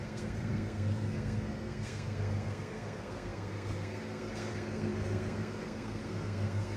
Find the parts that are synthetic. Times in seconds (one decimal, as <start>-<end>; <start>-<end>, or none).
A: 0.0-6.8